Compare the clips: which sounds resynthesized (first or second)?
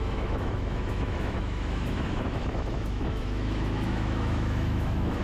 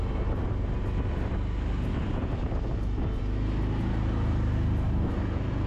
first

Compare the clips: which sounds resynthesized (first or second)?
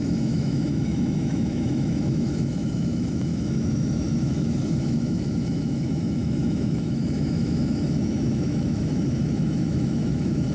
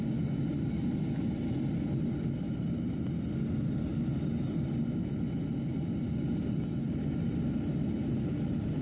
first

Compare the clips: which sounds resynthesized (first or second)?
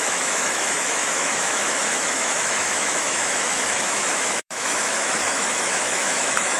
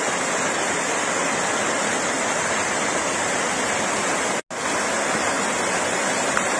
first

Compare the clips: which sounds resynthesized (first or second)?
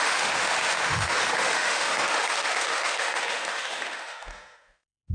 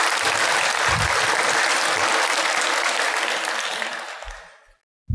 first